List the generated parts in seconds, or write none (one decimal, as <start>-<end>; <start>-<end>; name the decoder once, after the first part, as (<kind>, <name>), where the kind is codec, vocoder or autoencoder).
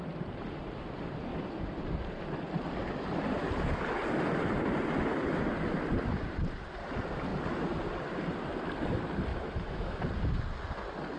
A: 9.3-10.0 (autoencoder, DAC-VAE)